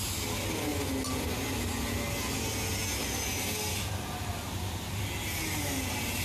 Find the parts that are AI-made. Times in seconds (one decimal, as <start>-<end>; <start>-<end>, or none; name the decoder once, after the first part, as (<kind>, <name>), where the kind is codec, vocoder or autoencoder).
none